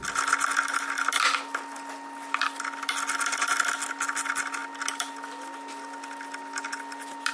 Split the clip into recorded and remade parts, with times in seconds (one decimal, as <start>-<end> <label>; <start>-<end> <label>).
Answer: 0.0-7.3 recorded